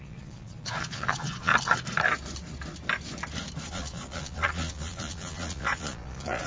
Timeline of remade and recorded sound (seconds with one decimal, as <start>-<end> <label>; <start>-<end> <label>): 0.0-1.5 remade; 1.5-3.7 recorded; 3.7-6.5 remade